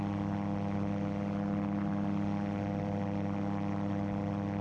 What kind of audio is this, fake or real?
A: real